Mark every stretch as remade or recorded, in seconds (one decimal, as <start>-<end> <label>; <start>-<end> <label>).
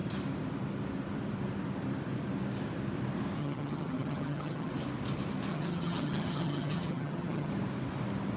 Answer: 0.0-3.4 recorded; 3.4-4.7 remade; 4.7-5.5 recorded; 5.5-7.5 remade; 7.5-8.4 recorded